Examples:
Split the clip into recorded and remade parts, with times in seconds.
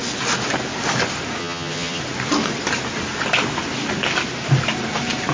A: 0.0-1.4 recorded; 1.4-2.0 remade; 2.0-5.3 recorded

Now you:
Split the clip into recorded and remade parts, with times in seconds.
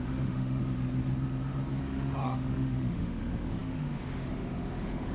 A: 0.0-0.6 remade; 0.6-1.8 recorded; 1.8-5.1 remade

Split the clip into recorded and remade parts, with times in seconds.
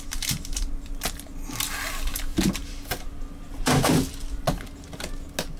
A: 0.0-5.6 recorded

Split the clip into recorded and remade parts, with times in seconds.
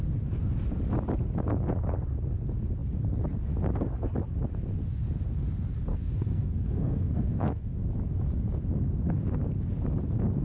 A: 0.0-5.9 recorded; 5.9-7.8 remade; 7.8-10.4 recorded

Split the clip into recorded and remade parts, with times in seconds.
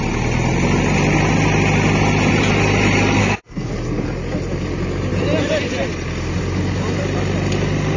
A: 0.0-3.2 recorded; 3.2-3.7 remade; 3.7-8.0 recorded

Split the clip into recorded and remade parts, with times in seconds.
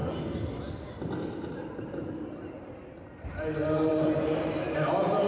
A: 0.0-2.0 recorded; 2.0-2.7 remade; 2.7-3.9 recorded; 3.9-5.3 remade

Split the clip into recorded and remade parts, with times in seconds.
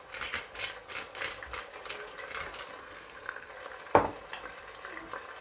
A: 0.0-2.8 recorded; 2.8-3.5 remade; 3.5-5.4 recorded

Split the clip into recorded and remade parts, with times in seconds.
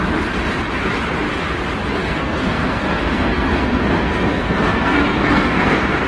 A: 0.0-2.0 recorded; 2.0-6.1 remade